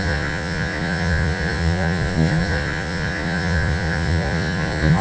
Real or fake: fake